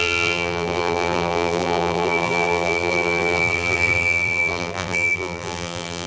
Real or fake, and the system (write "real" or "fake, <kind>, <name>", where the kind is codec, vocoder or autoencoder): fake, vocoder, BigVGAN v2